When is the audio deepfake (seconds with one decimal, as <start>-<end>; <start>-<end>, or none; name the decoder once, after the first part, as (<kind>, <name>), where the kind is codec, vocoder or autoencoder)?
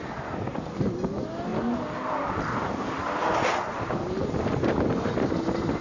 none